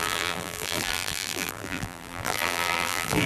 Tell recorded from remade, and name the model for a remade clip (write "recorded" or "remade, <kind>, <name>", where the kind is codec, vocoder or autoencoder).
remade, vocoder, BigVGAN v2